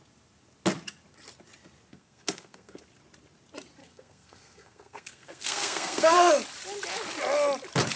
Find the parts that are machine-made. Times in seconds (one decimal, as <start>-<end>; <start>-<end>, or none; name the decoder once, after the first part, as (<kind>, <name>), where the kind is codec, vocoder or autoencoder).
1.9-2.8 (codec, SNAC); 3.8-6.3